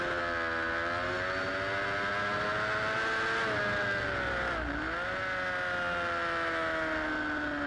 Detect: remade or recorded recorded